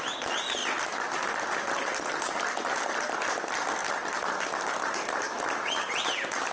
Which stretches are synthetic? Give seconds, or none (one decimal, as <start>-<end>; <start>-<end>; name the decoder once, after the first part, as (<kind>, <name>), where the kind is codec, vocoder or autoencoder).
none